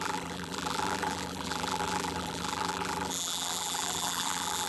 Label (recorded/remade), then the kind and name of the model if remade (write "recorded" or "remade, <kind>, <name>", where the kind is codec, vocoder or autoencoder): remade, vocoder, BigVGAN v2